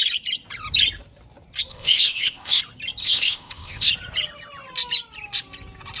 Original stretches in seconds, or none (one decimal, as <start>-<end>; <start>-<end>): 0.0-1.7; 2.6-3.0; 3.9-6.0